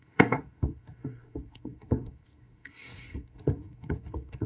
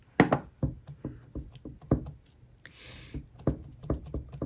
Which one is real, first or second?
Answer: second